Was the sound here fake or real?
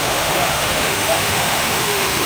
fake